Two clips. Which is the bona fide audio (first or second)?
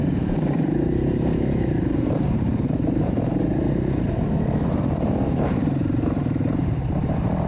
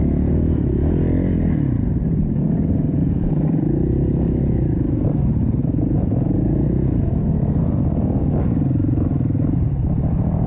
second